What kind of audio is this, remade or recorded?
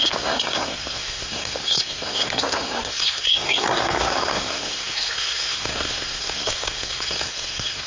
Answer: remade